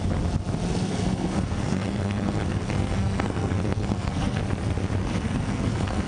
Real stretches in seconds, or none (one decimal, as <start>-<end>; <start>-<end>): 0.0-0.7; 4.4-5.0